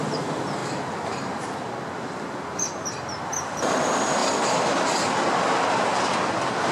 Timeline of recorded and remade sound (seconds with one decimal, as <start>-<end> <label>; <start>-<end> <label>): 0.0-6.7 recorded